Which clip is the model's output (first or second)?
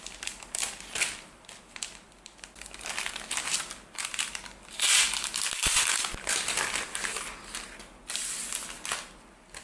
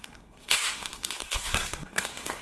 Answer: second